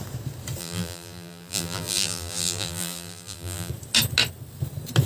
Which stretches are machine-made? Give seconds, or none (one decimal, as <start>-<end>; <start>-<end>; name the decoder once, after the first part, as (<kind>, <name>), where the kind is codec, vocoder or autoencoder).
0.6-3.7 (vocoder, BigVGAN v2)